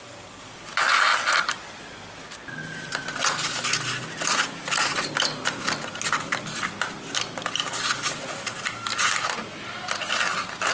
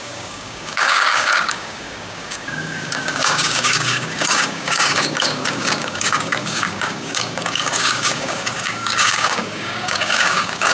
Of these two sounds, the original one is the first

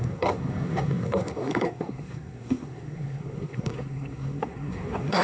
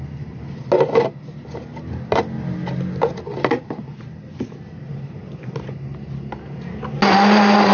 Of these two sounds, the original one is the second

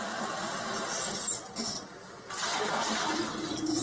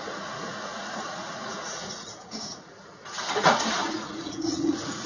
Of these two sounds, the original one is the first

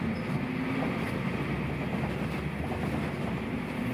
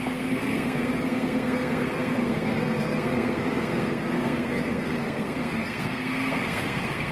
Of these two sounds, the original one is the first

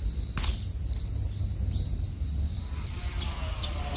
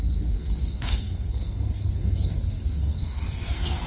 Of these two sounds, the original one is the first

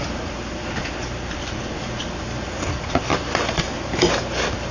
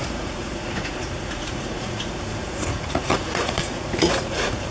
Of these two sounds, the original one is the first